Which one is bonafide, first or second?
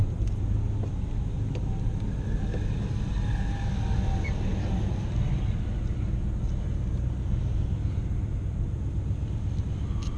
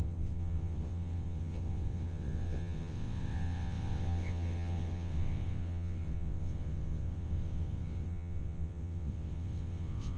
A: first